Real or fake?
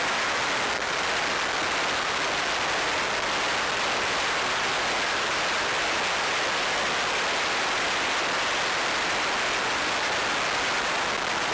real